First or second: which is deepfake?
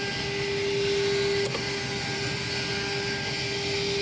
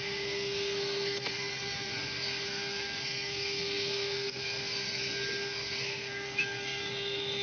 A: second